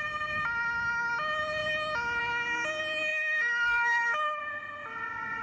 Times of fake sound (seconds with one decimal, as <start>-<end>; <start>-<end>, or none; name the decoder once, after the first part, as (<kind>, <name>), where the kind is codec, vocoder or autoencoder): 3.1-4.4 (codec, DAC)